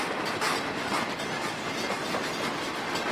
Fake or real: real